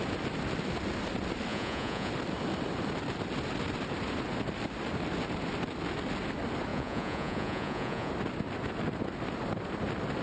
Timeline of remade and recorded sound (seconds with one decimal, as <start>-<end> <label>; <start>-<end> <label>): 0.0-1.5 recorded; 1.5-2.1 remade; 2.1-6.7 recorded; 6.7-8.1 remade; 8.1-10.2 recorded